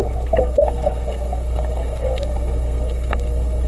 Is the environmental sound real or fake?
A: fake